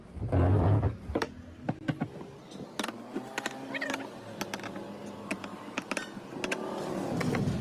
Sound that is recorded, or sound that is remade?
recorded